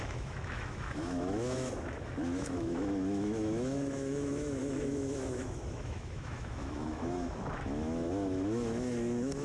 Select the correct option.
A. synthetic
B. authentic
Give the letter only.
A